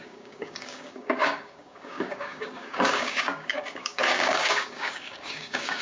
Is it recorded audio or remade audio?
remade